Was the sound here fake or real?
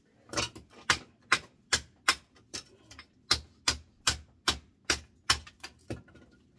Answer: real